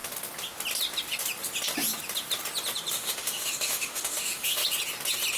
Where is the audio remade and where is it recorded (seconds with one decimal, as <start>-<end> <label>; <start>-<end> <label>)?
0.0-2.9 recorded; 2.9-4.6 remade; 4.6-5.4 recorded